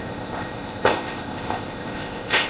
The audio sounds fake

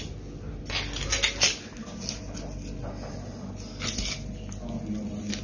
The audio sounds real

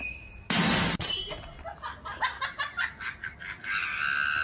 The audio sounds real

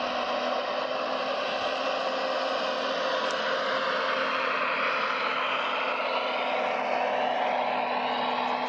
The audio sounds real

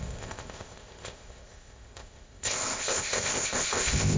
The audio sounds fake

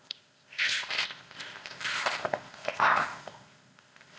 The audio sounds fake